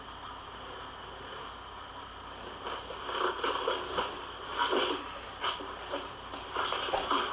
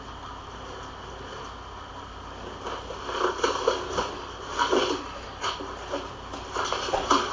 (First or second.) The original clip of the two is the second